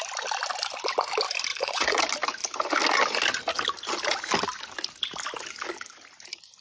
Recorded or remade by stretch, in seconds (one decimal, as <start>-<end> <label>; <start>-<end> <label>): 0.0-1.5 recorded; 1.5-2.0 remade; 2.0-6.6 recorded

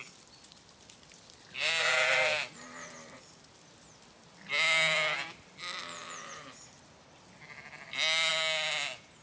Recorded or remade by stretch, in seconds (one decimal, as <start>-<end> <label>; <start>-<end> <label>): 0.0-9.2 recorded

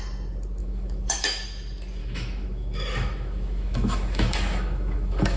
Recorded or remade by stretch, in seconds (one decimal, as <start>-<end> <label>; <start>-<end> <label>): 0.0-0.6 recorded; 0.6-1.4 remade; 1.4-2.0 recorded; 2.0-5.4 remade

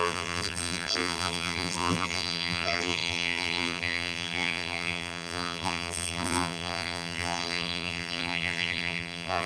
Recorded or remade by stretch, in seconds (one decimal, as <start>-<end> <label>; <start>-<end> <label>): 0.0-9.5 remade